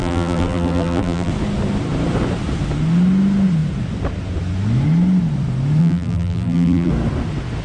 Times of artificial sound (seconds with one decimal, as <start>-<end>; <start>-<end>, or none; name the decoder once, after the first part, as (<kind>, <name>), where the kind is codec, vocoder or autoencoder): 0.0-1.3 (vocoder, BigVGAN v2); 5.8-6.9